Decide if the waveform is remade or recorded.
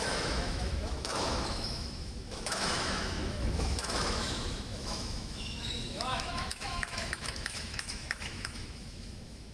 remade